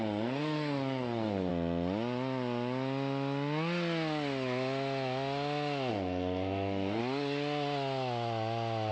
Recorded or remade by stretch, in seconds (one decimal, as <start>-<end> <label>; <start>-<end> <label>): 0.0-1.5 remade; 1.5-5.9 recorded; 5.9-7.0 remade; 7.0-8.9 recorded

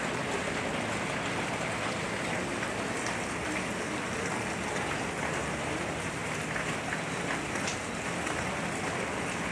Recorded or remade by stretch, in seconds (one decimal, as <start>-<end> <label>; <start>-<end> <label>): 0.0-9.5 recorded

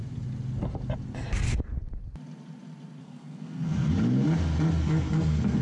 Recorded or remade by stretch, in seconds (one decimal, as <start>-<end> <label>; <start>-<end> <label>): 0.0-3.0 recorded; 3.0-3.9 remade; 3.9-4.8 recorded; 4.8-5.6 remade

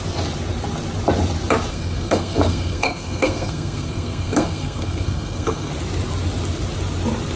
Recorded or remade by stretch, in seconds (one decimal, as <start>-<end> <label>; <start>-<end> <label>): 0.0-1.7 recorded; 1.7-5.7 remade; 5.7-7.4 recorded

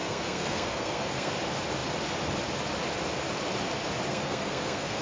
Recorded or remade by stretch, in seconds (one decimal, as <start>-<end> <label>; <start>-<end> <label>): 0.0-1.3 remade; 1.3-4.1 recorded; 4.1-5.0 remade

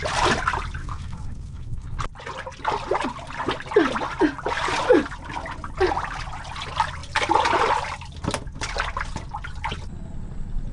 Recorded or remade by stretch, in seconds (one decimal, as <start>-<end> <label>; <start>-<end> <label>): 0.0-0.8 recorded; 0.8-2.0 remade; 2.0-10.7 recorded

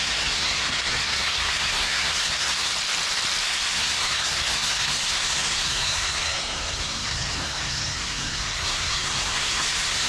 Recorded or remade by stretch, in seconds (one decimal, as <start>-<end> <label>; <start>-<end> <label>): 0.0-2.7 remade; 2.7-3.4 recorded; 3.4-10.1 remade

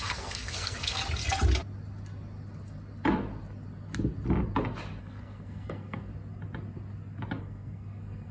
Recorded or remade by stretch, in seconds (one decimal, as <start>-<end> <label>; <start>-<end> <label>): 0.0-1.0 remade; 1.0-5.0 recorded; 5.0-6.1 remade; 6.1-7.4 recorded; 7.4-8.3 remade